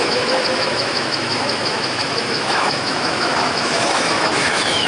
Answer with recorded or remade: remade